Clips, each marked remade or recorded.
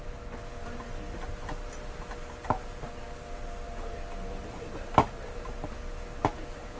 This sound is recorded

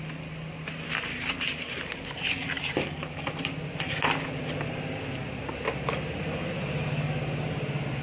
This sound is recorded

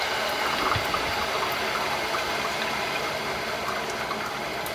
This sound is recorded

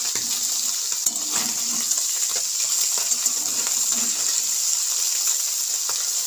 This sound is recorded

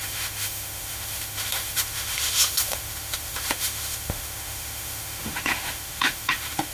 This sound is remade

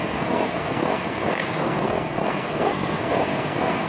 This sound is remade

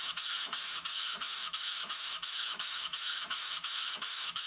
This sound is remade